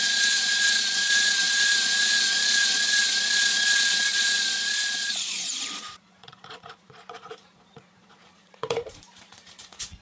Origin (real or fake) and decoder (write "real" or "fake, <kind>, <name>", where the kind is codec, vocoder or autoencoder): fake, vocoder, Vocos